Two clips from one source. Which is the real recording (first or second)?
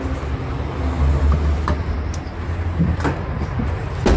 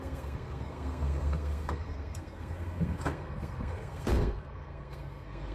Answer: first